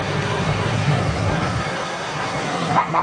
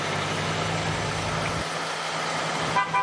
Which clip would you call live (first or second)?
second